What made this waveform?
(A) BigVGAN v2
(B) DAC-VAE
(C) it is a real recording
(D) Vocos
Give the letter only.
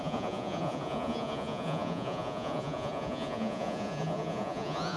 D